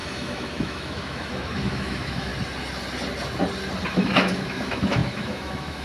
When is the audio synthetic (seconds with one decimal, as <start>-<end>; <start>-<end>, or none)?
0.0-2.3; 3.9-5.8